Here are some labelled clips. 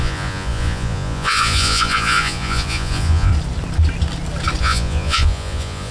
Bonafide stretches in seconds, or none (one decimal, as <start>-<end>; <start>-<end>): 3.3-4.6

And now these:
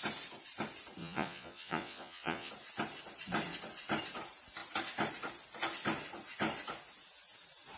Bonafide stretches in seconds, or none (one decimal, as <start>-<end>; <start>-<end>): 0.0-1.0; 2.5-7.8

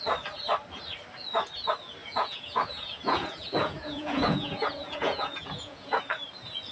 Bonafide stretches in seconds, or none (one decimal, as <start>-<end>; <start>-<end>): 0.0-2.0; 6.0-6.7